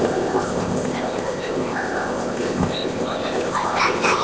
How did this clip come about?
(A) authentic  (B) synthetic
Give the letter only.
B